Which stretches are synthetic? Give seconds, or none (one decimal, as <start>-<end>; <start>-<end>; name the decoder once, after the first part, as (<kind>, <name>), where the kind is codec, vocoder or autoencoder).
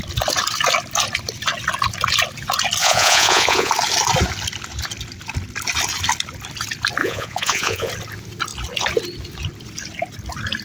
2.8-3.7 (vocoder, Vocos); 7.0-7.9